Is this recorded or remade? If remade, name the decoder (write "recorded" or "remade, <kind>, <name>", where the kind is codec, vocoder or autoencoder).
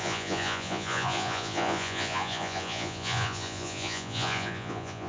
remade, vocoder, Vocos